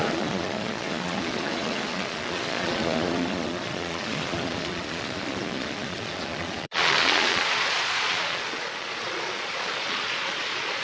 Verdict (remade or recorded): remade